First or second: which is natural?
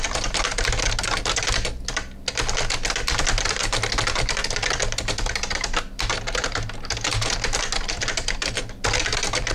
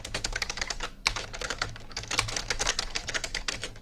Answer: first